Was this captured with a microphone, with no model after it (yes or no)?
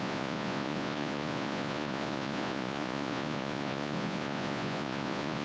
no